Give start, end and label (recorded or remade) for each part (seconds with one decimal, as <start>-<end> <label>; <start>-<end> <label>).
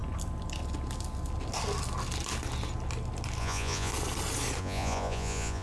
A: 0.0-3.4 recorded; 3.4-3.9 remade; 3.9-4.6 recorded; 4.6-5.6 remade